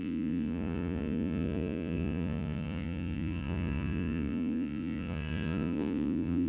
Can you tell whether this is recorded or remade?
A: remade